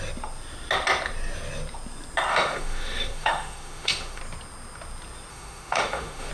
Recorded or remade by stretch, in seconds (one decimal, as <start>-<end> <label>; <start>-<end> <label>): 0.0-2.3 recorded; 2.3-4.2 remade; 4.2-5.3 recorded; 5.3-6.3 remade